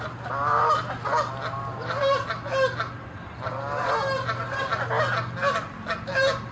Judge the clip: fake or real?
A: real